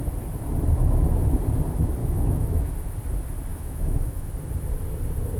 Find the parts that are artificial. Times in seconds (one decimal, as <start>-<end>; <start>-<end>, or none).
2.0-2.7; 3.5-4.3